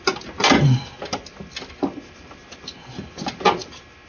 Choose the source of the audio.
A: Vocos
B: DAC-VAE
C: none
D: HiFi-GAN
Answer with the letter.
C